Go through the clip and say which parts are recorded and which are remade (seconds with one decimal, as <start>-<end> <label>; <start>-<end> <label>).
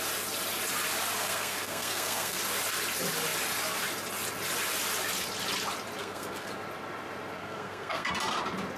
0.0-1.2 recorded; 1.2-2.4 remade; 2.4-6.0 recorded; 6.0-6.5 remade; 6.5-7.4 recorded; 7.4-8.1 remade; 8.1-8.8 recorded